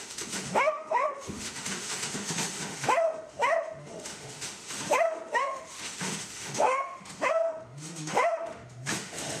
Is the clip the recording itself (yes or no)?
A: no